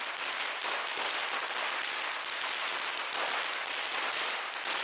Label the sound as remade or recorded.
recorded